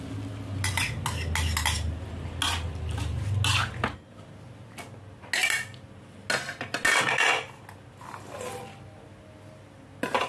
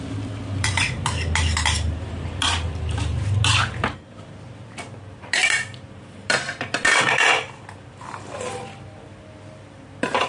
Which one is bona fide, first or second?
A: first